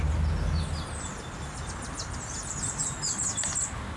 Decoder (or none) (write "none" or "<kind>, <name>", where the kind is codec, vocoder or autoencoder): none